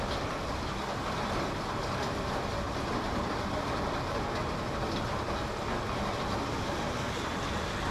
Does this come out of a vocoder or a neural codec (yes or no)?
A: no